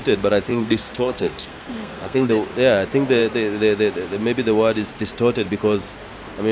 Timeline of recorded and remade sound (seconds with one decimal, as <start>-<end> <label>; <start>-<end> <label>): 0.0-0.5 recorded; 0.5-2.3 remade; 2.3-6.5 recorded